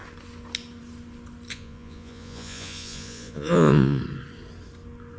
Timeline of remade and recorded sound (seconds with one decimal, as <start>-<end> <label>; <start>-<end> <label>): 0.0-1.5 recorded; 1.5-4.0 remade; 4.0-5.2 recorded